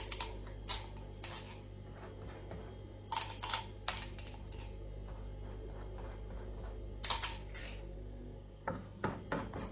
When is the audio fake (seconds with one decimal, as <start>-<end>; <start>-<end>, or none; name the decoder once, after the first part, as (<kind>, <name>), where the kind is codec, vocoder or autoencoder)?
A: 7.6-9.2 (codec, SNAC)

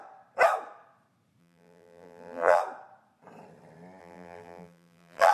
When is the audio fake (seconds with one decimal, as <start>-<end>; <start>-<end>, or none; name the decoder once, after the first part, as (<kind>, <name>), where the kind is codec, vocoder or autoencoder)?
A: 1.4-2.6 (vocoder, BigVGAN v2); 4.0-5.3